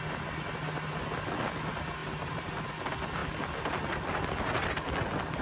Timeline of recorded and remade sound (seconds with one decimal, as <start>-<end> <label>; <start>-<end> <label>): 0.0-2.0 recorded; 2.0-2.7 remade; 2.7-5.4 recorded